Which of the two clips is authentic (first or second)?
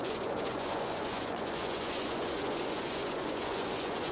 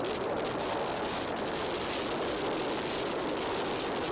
second